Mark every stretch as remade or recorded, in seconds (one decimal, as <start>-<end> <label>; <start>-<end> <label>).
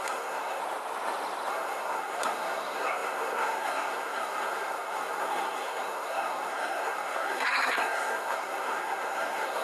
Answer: 0.0-0.6 remade; 0.6-1.5 recorded; 1.5-9.6 remade